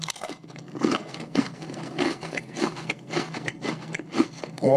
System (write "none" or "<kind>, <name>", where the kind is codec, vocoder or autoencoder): codec, SNAC